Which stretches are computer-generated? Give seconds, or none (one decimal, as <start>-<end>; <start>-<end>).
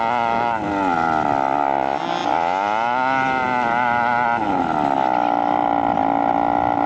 none